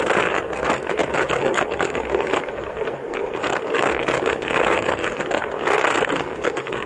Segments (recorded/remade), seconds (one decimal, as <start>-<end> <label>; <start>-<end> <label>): 0.0-6.9 remade

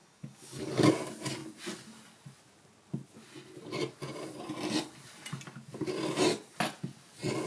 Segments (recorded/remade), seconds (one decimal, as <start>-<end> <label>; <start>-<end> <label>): 0.0-0.9 remade; 0.9-7.5 recorded